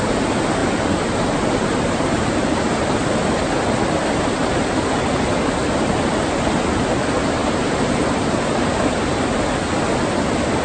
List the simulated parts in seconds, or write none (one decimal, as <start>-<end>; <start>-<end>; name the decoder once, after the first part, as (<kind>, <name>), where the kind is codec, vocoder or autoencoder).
0.6-2.8 (vocoder, BigVGAN v2); 7.4-9.3